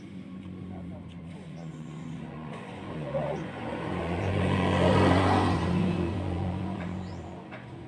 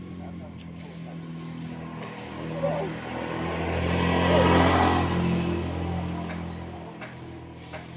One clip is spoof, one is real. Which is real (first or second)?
second